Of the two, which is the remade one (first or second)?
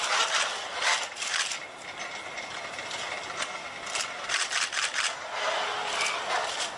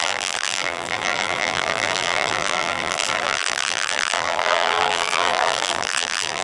second